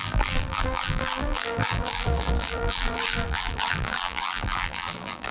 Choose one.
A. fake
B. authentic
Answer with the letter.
A